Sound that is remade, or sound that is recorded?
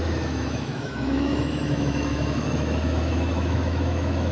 remade